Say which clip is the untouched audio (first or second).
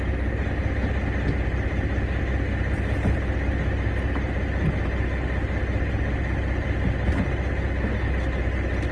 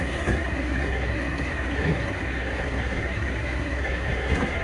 first